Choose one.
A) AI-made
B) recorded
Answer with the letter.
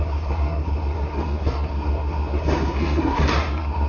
A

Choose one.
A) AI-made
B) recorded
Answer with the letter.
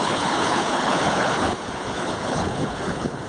A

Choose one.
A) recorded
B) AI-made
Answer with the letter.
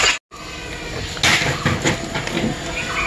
A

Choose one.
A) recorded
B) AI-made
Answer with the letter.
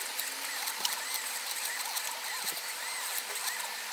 A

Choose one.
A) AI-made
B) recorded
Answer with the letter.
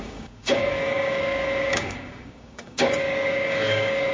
A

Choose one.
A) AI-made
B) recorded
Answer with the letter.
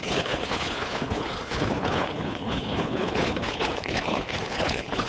A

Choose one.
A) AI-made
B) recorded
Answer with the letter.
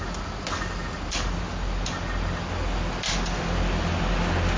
B